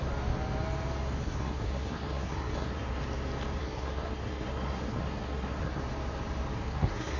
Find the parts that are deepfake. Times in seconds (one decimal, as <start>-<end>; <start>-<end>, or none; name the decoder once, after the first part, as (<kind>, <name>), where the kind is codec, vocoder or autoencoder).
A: 1.2-3.0 (codec, SNAC); 3.6-5.8; 6.5-7.2